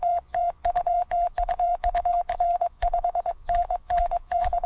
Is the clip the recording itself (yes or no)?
no